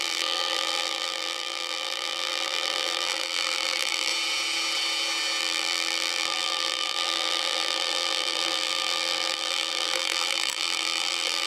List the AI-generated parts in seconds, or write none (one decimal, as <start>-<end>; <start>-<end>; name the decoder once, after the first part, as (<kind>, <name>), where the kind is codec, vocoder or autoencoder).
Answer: 0.0-4.1 (vocoder, BigVGAN v2); 5.4-11.5